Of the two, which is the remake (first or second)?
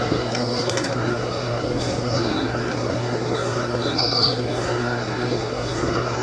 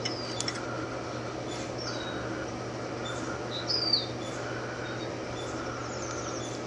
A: first